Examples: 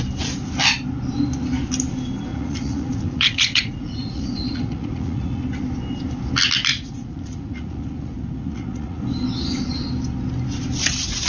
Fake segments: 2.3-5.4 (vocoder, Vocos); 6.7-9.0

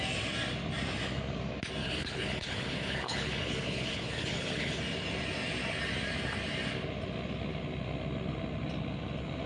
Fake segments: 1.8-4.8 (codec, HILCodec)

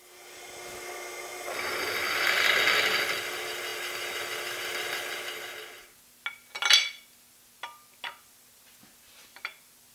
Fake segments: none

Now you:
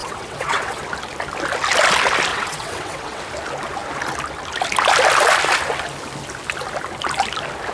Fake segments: 0.0-0.8 (vocoder, WaveNeXt); 2.3-3.2

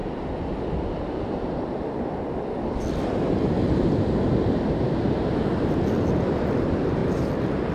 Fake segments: none

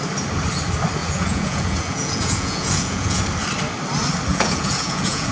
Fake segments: 1.0-3.2 (vocoder, Vocos); 4.3-5.3

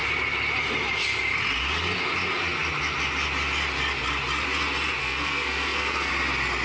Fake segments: 5.0-6.1 (codec, SNAC)